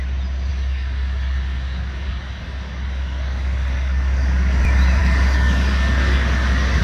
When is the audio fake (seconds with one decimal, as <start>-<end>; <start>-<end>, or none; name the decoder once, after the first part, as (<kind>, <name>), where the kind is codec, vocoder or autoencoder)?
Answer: 0.5-4.6 (codec, DAC); 5.0-6.8